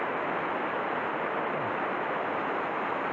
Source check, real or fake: real